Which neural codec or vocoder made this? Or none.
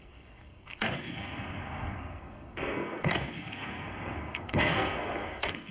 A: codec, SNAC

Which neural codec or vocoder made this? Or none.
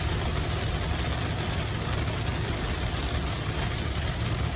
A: none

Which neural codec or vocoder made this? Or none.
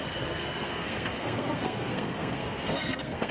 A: codec, SNAC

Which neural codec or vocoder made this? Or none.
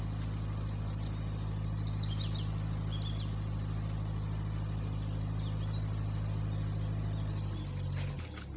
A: none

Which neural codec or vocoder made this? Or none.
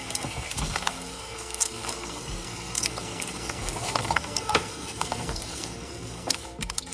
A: codec, SNAC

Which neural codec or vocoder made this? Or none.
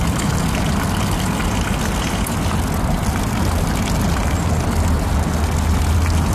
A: none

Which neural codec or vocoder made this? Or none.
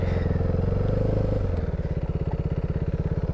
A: none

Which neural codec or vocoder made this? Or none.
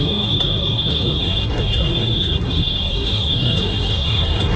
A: codec, SNAC